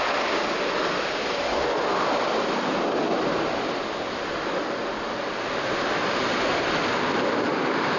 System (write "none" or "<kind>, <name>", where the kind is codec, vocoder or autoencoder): none